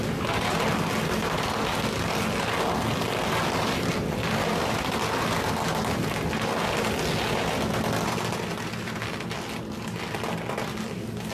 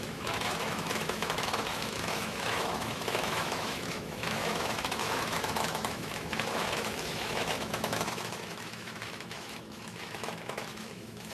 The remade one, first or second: second